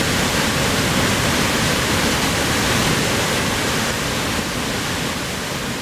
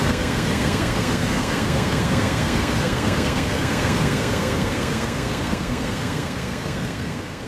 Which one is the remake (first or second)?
second